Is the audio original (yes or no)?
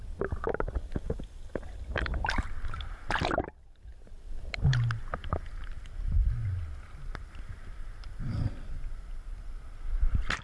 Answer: yes